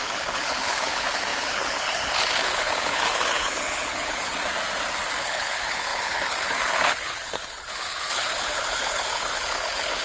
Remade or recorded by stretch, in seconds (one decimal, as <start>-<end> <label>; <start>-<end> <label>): 0.0-4.3 remade; 4.3-5.2 recorded; 5.2-10.0 remade